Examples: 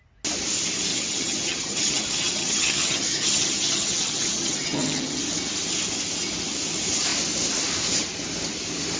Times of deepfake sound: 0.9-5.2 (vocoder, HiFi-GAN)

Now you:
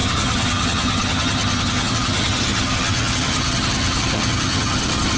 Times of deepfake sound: 0.0-5.2 (vocoder, HiFi-GAN)

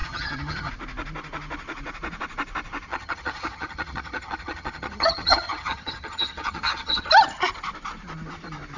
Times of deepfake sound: 0.0-0.7 (vocoder, HiFi-GAN); 2.9-7.1

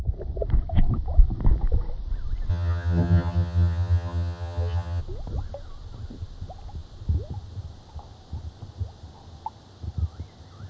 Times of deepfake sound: 2.5-5.0 (vocoder, HiFi-GAN)